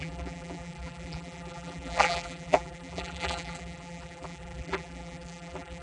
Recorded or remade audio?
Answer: remade